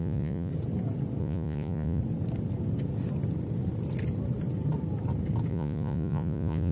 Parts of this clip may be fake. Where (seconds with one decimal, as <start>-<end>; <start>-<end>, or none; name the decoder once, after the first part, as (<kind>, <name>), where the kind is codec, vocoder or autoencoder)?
0.0-0.5 (vocoder, Vocos); 1.2-2.0; 5.5-6.7